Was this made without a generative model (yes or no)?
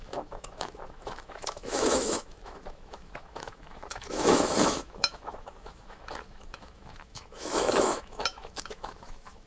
no